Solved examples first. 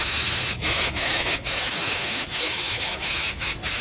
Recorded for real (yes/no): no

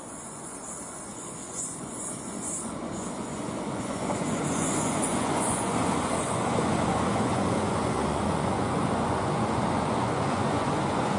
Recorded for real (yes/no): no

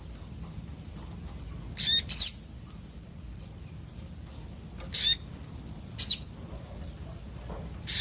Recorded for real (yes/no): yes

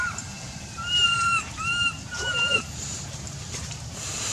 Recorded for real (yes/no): no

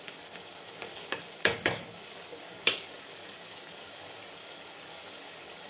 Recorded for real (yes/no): no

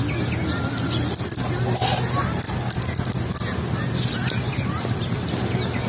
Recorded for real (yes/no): yes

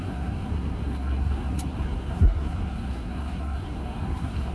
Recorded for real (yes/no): no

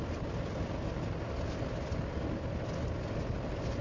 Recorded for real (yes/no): yes